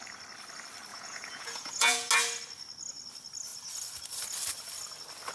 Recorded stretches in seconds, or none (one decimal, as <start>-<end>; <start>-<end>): 0.0-0.9; 2.1-5.3